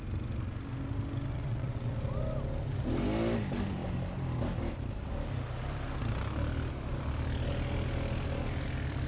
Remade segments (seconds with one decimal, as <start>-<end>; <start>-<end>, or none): 1.3-1.9

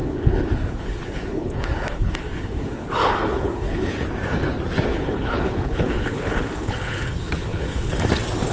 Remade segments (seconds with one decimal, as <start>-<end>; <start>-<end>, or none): 0.0-3.9; 4.9-8.0

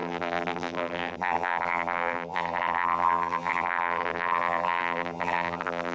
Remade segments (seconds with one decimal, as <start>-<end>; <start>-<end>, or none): 0.0-5.9

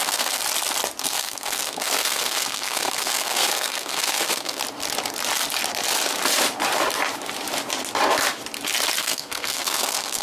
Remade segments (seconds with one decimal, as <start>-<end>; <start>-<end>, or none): 0.0-0.4; 1.0-4.6; 9.0-10.2

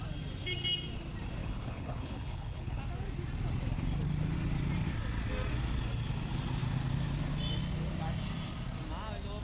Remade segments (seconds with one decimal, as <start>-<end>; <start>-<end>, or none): 1.4-2.8

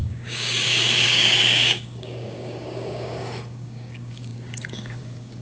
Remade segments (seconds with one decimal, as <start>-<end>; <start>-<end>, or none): 0.0-5.4

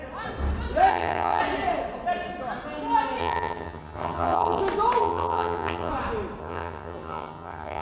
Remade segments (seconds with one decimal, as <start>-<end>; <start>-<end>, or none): 0.9-1.4; 3.2-4.6; 5.0-5.9; 6.4-7.8